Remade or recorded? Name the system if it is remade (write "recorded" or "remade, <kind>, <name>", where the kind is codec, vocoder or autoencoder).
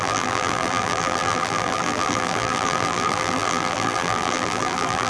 remade, vocoder, BigVGAN v2